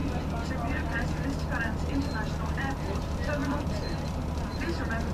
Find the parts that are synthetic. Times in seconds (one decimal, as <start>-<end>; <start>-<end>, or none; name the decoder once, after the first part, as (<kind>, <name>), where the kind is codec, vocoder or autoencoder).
2.4-5.1 (vocoder, BigVGAN v2)